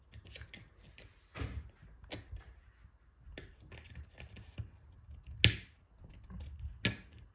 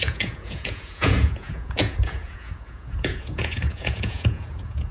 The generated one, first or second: second